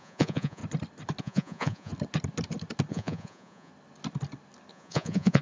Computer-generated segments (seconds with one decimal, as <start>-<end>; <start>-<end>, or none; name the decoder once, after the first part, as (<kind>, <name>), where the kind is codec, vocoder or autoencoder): 0.0-0.6 (vocoder, Vocos); 1.2-1.9; 2.9-3.7; 4.7-5.4